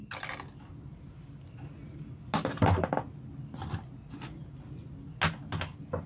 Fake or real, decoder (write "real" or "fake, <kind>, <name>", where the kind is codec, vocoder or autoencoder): real